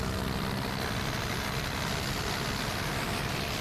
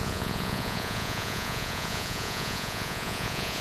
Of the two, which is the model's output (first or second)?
second